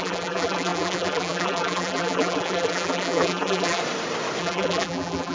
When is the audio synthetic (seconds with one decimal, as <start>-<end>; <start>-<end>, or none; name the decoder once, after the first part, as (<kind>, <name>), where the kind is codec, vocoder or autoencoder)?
0.0-3.8 (vocoder, BigVGAN v2); 4.4-5.3